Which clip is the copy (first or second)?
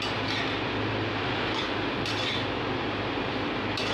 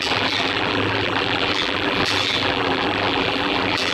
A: second